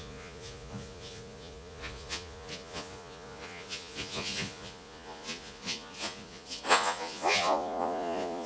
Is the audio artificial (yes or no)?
yes